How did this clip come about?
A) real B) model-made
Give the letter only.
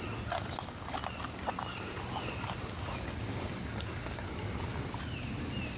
A